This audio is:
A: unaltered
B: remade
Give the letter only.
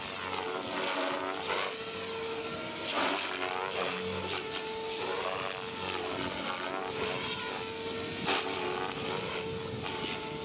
A